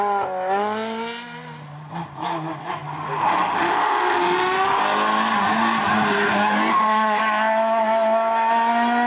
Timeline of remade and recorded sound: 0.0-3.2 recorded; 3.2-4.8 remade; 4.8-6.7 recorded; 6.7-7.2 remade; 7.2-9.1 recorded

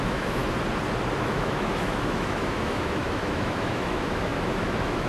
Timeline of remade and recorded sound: 0.0-0.4 remade; 0.4-1.2 recorded; 1.2-5.1 remade